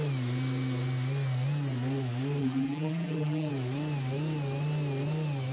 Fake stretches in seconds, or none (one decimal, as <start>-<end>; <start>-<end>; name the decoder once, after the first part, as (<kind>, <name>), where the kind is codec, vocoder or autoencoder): 2.4-3.5 (vocoder, BigVGAN v2)